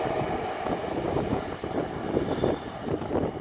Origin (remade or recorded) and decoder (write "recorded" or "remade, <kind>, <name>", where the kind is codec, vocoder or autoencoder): remade, vocoder, BigVGAN v2